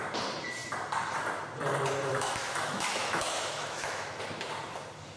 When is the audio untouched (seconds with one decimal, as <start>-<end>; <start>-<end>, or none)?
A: 0.0-2.1; 4.2-5.2